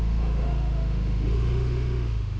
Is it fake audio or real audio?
fake